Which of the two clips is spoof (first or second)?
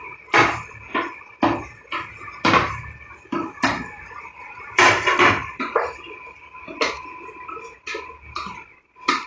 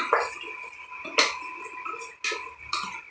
first